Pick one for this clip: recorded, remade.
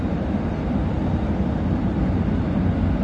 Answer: recorded